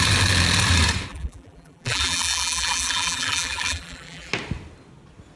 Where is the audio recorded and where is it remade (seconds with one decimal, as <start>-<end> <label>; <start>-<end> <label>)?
0.0-1.1 recorded; 1.1-4.3 remade; 4.3-5.4 recorded